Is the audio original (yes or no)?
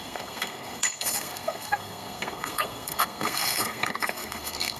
no